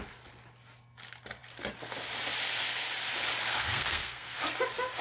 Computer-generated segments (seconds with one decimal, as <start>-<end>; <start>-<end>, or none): 3.5-4.4